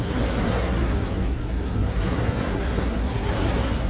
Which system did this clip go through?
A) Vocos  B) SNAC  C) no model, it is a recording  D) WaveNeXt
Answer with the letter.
B